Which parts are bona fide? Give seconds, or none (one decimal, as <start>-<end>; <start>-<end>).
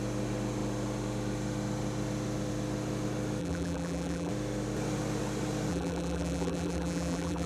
0.0-3.4; 4.3-5.7